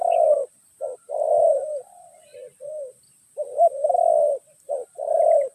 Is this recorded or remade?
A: recorded